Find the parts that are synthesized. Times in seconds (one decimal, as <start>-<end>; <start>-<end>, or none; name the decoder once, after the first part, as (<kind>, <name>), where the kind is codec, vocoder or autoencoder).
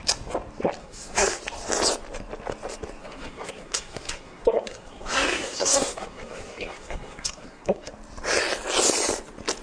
0.8-1.4 (codec, SNAC); 3.0-7.9